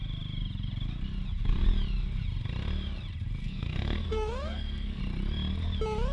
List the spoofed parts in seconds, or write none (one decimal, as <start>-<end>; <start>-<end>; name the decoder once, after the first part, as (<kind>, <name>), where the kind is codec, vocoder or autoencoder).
3.4-5.0 (codec, SNAC)